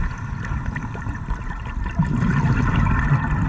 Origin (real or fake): real